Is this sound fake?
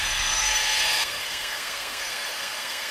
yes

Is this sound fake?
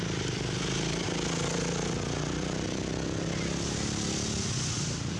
no